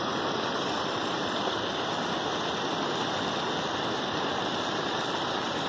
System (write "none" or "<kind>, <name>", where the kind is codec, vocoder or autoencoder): none